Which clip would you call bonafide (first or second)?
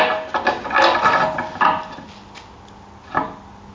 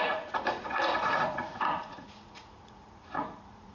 first